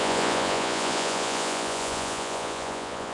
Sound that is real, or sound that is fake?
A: fake